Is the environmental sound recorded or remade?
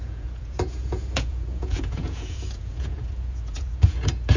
remade